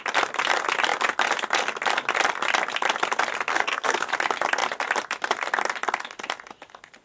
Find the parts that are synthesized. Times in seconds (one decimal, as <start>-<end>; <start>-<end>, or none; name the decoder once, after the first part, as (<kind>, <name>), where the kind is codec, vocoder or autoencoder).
3.5-4.1 (codec, SNAC)